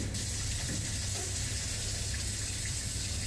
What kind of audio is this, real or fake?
real